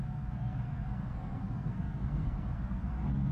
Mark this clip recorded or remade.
remade